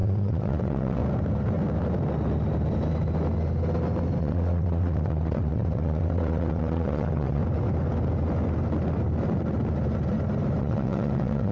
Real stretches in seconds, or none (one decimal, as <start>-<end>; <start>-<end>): 1.0-4.2; 7.4-10.6